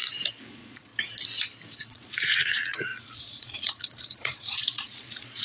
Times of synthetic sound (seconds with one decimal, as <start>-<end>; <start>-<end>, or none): 0.5-0.9; 1.8-5.4